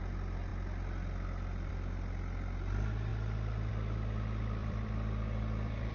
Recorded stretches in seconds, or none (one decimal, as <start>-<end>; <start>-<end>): 0.0-4.6